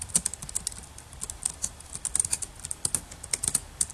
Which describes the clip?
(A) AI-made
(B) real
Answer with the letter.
B